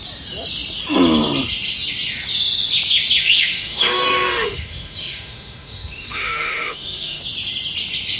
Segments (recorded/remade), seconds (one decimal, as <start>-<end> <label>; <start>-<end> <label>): 0.0-3.2 recorded; 3.2-7.2 remade; 7.2-8.2 recorded